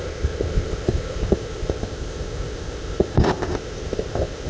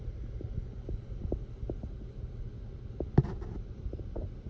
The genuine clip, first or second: second